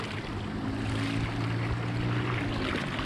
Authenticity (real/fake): real